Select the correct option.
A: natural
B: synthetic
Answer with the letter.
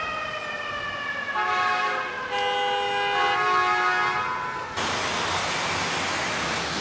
A